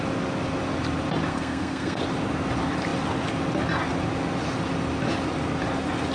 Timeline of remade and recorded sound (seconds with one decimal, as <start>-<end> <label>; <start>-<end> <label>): 0.0-1.3 recorded; 1.3-2.0 remade; 2.0-6.1 recorded